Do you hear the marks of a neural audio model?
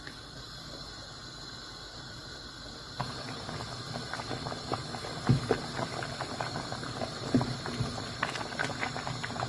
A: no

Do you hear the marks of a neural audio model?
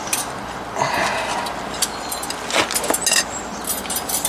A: no